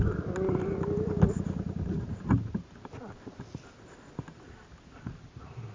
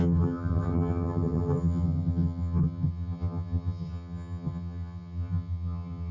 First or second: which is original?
first